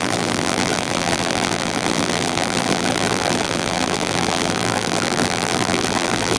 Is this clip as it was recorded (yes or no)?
no